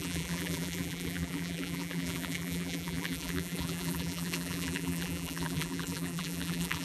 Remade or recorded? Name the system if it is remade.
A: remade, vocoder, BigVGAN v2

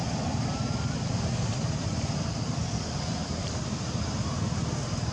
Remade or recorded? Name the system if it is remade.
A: remade, vocoder, BigVGAN v2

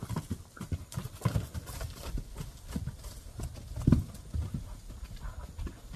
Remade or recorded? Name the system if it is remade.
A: recorded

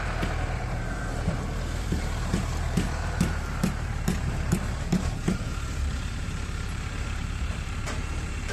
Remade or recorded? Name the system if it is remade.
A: remade, vocoder, BigVGAN v2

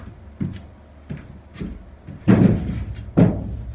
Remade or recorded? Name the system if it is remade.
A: recorded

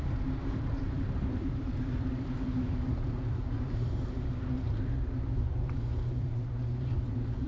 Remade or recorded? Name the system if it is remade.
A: remade, vocoder, BigVGAN v2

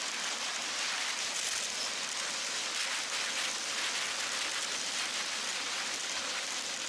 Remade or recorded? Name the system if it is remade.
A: recorded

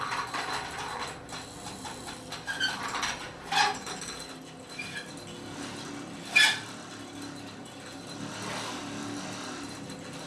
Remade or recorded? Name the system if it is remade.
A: recorded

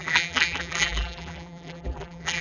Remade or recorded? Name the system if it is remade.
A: remade, vocoder, BigVGAN v2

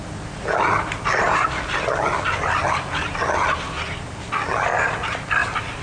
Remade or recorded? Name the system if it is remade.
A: recorded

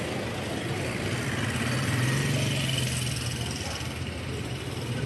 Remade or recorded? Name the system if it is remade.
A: recorded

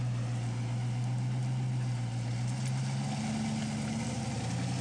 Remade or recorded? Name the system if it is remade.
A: recorded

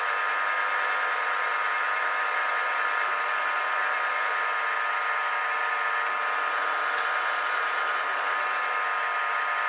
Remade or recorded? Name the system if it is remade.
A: recorded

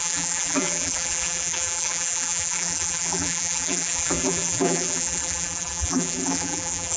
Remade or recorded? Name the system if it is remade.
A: remade, vocoder, BigVGAN v2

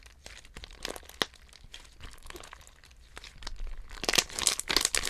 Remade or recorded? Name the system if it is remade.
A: recorded